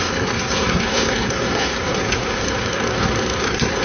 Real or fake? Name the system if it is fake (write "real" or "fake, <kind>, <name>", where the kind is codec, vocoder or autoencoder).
fake, codec, SNAC